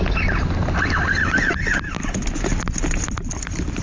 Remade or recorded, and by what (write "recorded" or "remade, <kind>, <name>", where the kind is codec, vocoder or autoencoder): recorded